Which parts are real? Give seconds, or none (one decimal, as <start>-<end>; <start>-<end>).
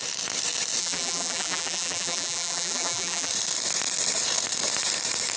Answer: 0.0-0.8; 3.3-5.4